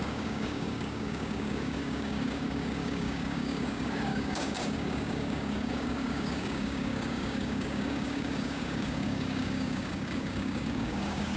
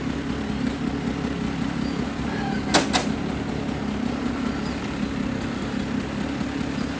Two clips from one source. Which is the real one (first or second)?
second